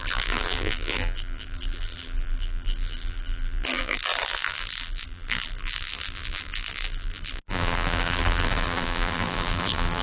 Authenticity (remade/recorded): remade